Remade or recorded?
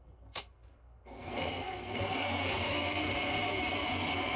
remade